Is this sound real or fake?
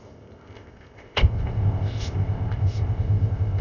fake